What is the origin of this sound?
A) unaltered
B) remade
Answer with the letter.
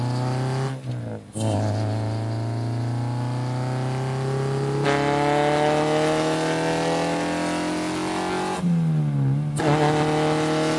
A